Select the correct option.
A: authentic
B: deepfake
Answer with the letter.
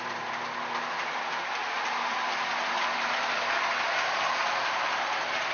A